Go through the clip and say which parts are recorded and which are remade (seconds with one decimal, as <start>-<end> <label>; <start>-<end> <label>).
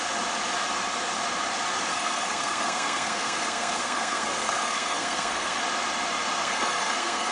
0.0-1.9 recorded; 1.9-5.6 remade; 5.6-6.4 recorded; 6.4-7.3 remade